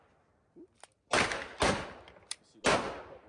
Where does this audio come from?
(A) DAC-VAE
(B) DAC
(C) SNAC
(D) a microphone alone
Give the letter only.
D